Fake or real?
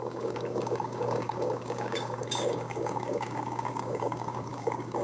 fake